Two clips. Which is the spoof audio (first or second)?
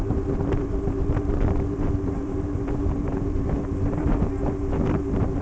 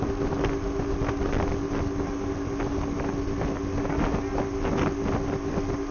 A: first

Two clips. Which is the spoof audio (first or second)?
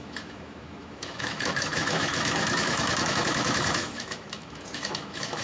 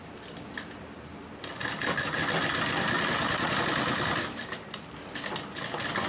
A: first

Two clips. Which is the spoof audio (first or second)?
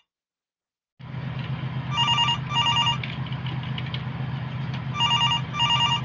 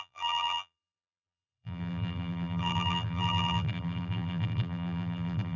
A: second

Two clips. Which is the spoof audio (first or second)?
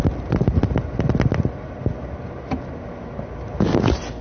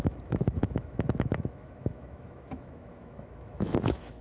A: second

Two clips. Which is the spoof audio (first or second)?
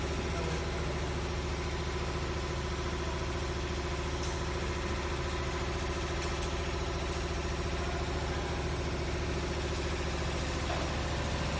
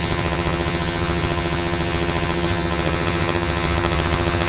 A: second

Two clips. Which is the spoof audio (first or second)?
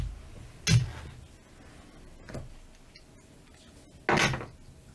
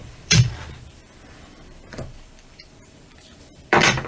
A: second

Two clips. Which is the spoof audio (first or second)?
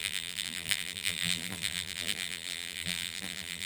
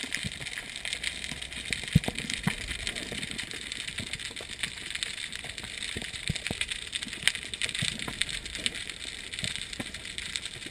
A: first